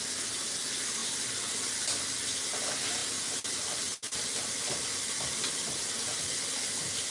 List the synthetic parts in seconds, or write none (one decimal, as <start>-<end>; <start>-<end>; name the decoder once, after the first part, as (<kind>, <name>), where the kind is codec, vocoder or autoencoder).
none